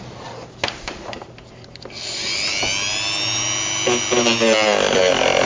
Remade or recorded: recorded